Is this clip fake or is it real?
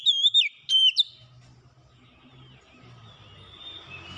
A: real